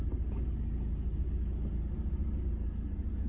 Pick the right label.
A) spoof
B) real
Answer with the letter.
B